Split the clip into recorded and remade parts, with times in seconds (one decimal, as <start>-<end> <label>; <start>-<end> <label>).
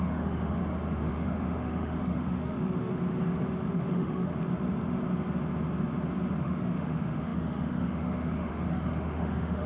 0.0-0.6 remade; 0.6-1.1 recorded; 1.1-2.9 remade; 2.9-3.7 recorded; 3.7-4.3 remade; 4.3-6.4 recorded; 6.4-9.7 remade